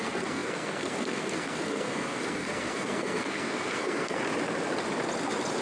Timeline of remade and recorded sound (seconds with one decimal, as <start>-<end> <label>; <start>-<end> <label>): 0.0-4.2 remade; 4.2-5.6 recorded